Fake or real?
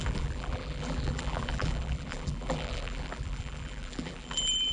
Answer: fake